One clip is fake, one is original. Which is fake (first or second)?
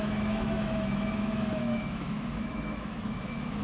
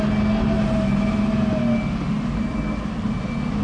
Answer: first